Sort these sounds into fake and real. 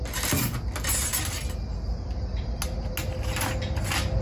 real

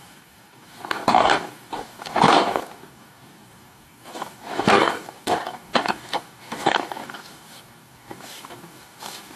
fake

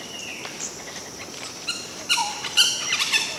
fake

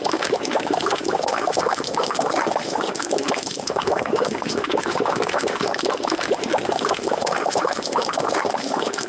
fake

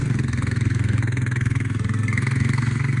fake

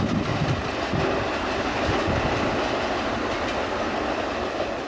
real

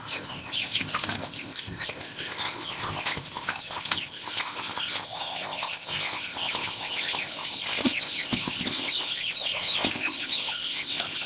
fake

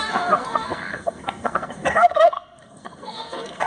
fake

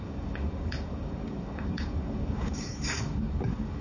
fake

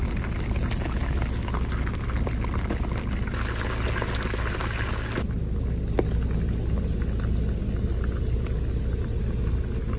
real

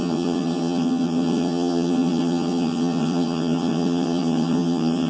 fake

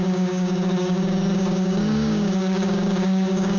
fake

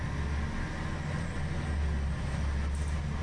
real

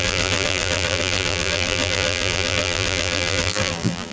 fake